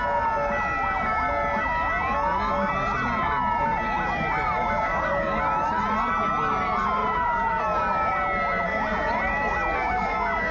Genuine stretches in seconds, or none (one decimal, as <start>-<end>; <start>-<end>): 0.0-7.0; 7.6-10.5